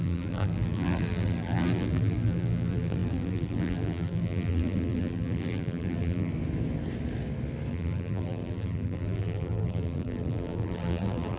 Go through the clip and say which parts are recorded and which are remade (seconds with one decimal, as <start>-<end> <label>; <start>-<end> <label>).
0.0-6.3 remade; 6.3-7.7 recorded; 7.7-11.4 remade